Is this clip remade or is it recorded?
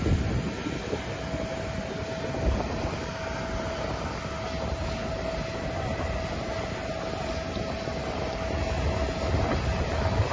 recorded